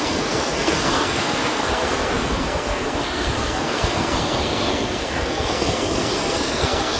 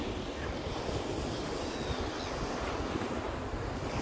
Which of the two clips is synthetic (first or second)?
first